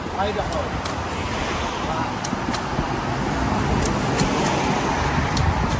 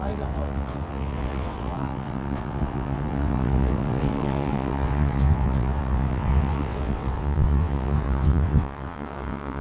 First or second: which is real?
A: first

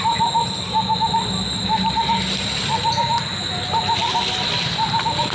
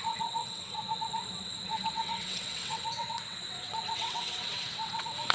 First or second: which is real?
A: first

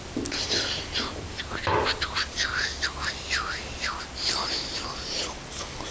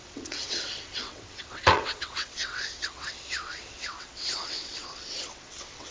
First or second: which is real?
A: first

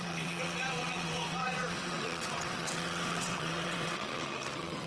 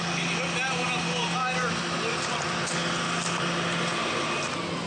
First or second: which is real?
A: second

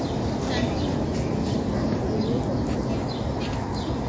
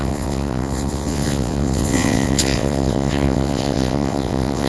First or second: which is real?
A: first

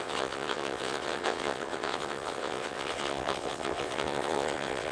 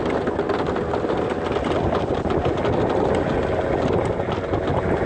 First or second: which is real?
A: second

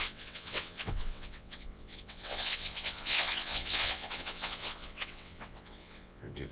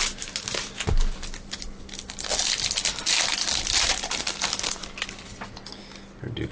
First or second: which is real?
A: second